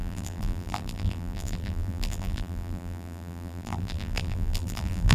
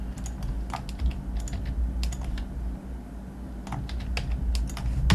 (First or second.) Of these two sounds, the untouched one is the second